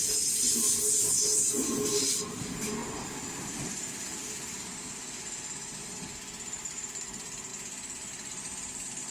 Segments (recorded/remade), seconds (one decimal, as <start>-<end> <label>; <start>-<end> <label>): 0.0-9.1 recorded